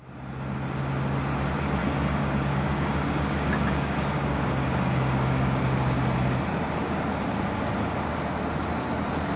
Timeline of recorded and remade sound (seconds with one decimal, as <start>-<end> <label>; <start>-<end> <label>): 0.0-1.8 recorded; 1.8-5.6 remade; 5.6-9.4 recorded